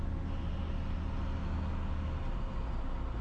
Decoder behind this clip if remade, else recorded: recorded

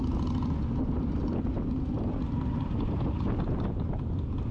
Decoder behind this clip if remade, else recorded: recorded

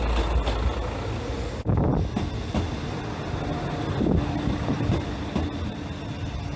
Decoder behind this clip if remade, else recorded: recorded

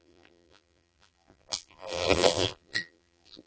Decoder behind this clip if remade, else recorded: remade, vocoder, BigVGAN v2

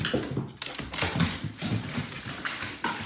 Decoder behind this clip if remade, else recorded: recorded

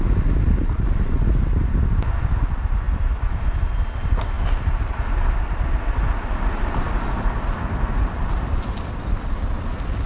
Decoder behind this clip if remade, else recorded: recorded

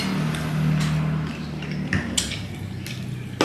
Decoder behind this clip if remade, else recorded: recorded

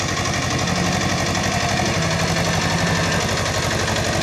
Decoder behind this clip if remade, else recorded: recorded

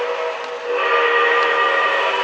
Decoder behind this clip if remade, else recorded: recorded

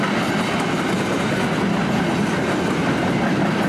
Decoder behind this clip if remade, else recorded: recorded